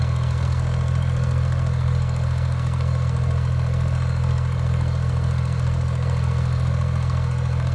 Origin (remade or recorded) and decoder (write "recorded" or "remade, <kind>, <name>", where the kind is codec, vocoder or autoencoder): remade, codec, SNAC